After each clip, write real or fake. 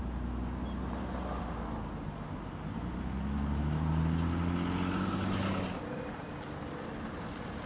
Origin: real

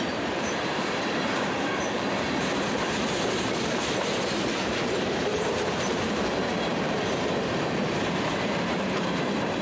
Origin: fake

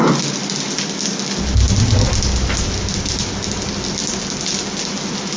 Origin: real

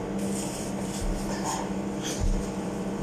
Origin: fake